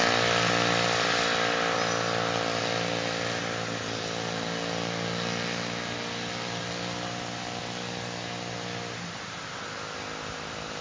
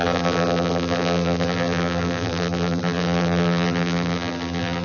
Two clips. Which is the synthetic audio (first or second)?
second